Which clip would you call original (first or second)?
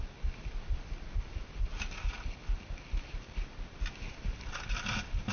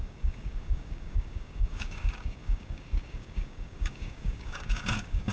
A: first